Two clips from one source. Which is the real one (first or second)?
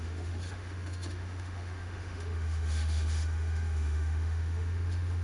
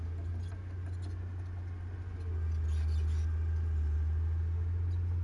second